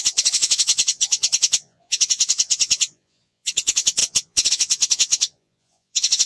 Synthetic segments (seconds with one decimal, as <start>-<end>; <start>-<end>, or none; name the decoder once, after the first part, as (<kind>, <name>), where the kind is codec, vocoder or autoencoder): 0.0-6.3 (vocoder, Vocos)